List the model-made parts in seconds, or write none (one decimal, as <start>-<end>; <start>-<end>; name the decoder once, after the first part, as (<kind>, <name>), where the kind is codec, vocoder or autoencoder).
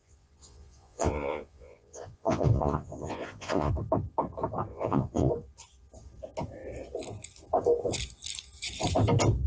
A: 0.0-3.7 (vocoder, Vocos); 4.7-5.3